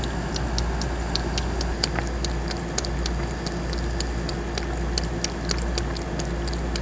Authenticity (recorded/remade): recorded